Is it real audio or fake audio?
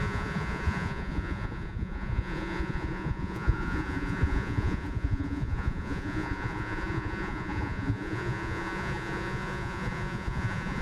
fake